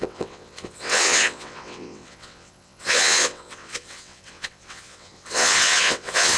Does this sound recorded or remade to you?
remade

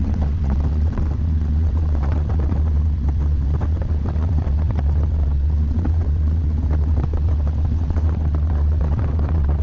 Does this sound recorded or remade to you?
remade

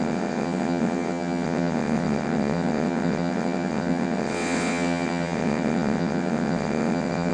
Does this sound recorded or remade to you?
remade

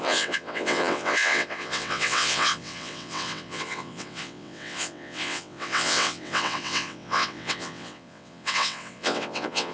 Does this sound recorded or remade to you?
remade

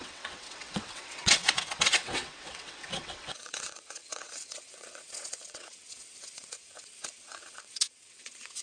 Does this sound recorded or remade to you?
remade